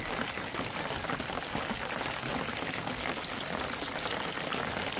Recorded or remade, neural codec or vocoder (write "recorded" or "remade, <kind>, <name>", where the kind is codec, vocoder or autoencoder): recorded